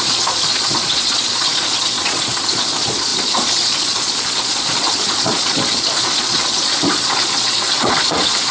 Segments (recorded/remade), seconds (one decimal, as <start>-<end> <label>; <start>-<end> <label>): 0.0-8.5 remade